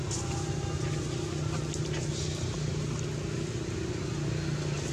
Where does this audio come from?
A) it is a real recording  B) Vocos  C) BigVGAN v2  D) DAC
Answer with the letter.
A